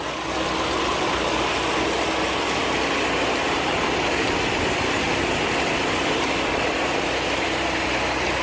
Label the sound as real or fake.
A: real